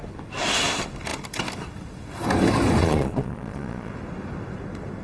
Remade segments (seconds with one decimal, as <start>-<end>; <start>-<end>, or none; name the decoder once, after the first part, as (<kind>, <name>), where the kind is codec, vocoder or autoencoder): 2.8-3.9 (vocoder, Vocos)